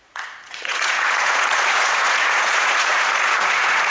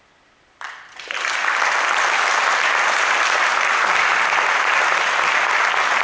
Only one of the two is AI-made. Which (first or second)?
first